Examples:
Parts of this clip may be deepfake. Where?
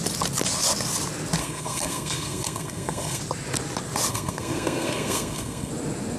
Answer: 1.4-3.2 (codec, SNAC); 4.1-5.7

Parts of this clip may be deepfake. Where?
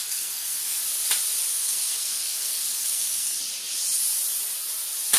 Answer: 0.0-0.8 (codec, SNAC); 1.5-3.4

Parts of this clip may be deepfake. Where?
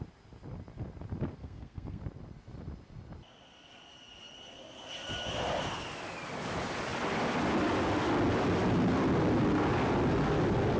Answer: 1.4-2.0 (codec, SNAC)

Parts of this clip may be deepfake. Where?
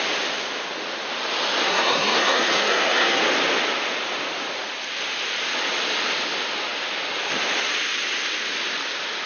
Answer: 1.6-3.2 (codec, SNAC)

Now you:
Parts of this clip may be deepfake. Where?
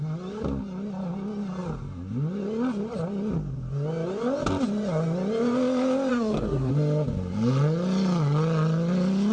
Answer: 6.1-6.7 (codec, SNAC)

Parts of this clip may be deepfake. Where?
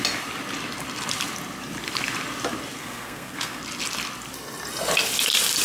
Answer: 2.8-3.6 (codec, SNAC)